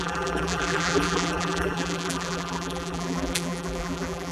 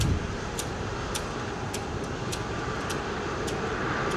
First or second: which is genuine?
second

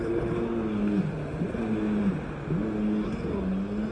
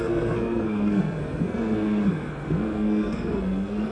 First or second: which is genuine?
first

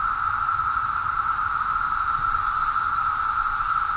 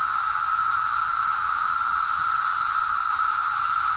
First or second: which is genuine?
first